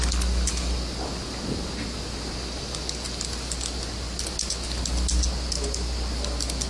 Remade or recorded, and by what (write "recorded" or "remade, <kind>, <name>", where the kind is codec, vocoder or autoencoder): recorded